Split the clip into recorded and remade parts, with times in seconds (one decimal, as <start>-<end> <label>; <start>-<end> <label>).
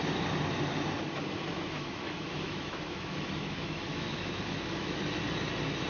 0.0-1.5 recorded; 1.5-5.0 remade; 5.0-5.9 recorded